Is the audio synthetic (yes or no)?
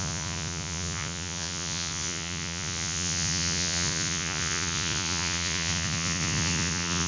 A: yes